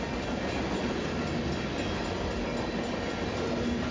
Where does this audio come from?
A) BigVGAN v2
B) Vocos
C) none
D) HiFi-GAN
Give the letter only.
C